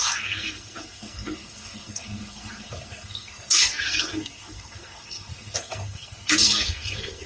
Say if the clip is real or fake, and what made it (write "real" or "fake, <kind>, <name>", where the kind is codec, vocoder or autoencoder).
fake, codec, SNAC